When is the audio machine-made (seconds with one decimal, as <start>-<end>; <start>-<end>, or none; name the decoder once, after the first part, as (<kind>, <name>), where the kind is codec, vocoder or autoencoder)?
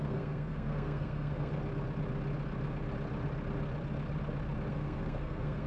0.0-1.5 (codec, SNAC); 4.7-5.7